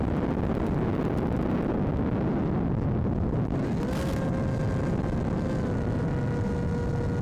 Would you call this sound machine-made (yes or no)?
no